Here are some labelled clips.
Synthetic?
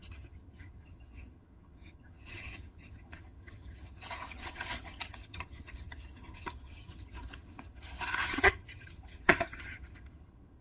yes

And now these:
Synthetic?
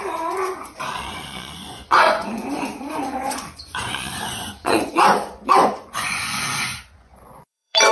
yes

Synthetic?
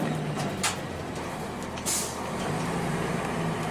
no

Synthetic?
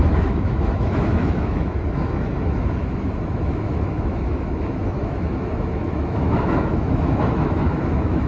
yes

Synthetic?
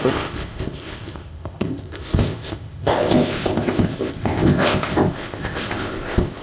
yes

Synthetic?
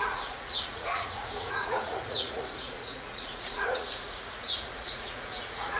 yes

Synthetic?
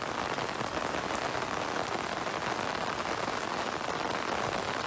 no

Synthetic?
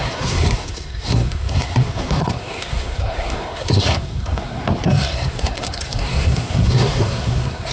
yes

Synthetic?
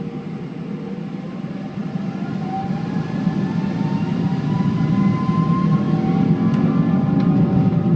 no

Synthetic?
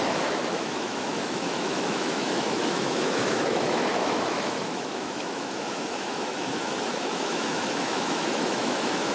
yes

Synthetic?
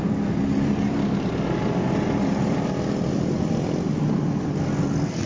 no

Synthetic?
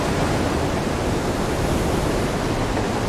no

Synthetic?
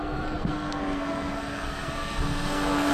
yes